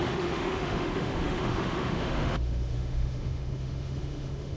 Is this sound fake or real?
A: fake